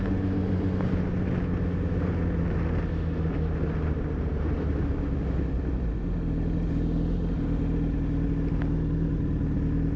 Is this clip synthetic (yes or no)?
no